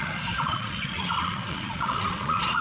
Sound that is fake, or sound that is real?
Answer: fake